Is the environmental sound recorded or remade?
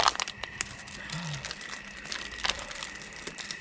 recorded